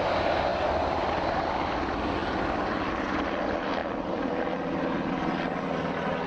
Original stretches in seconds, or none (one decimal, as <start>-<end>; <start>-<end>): 0.0-6.3